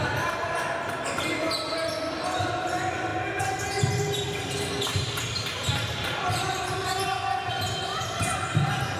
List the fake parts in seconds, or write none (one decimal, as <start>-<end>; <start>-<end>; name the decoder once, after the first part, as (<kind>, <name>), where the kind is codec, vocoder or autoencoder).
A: none